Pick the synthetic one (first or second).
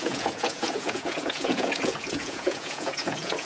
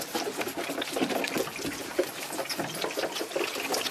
first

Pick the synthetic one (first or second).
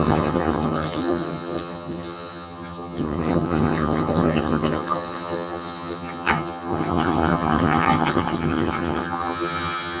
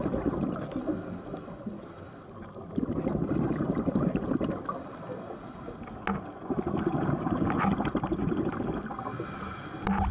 first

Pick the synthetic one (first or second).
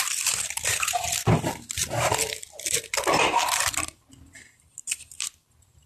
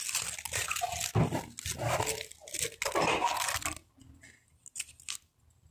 first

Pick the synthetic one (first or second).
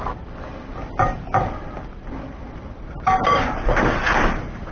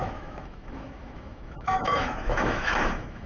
second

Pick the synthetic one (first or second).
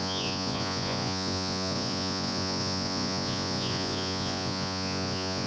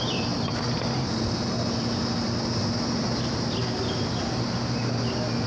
first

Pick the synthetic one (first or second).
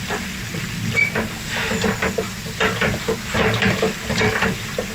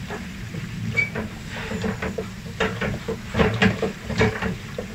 second